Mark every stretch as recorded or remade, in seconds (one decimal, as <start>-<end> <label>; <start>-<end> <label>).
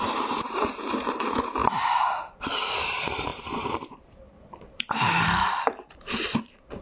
0.0-1.6 remade; 1.6-2.4 recorded; 2.4-6.8 remade